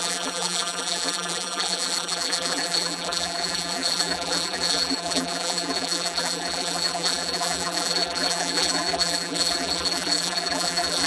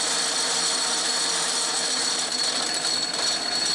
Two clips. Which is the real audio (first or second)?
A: second